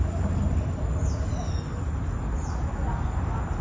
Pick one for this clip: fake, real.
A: real